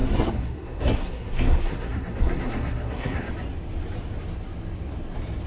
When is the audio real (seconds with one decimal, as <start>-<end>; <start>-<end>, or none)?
3.3-5.5